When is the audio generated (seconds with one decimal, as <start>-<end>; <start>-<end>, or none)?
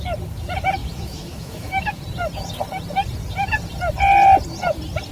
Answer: 0.8-2.0